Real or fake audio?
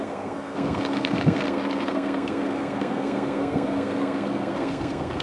fake